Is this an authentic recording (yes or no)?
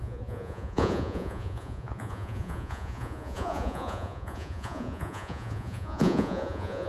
no